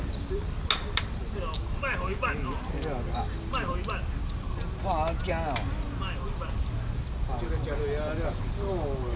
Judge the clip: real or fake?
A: real